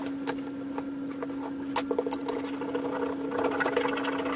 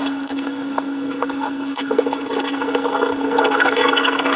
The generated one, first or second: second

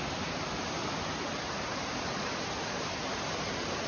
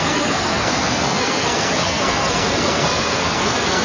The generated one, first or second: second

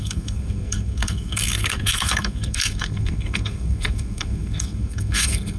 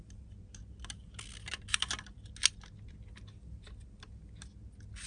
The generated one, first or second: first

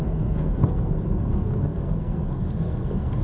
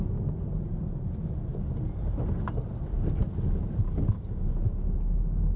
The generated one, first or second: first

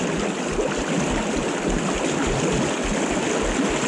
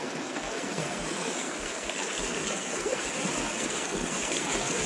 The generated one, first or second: second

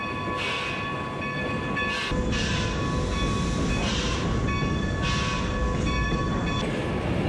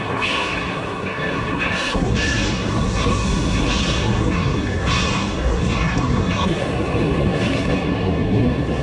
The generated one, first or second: second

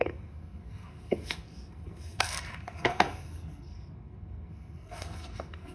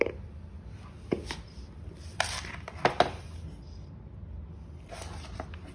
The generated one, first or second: first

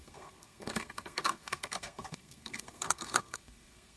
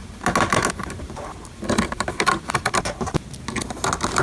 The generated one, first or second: first